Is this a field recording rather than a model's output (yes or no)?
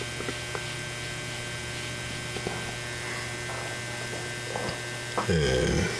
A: yes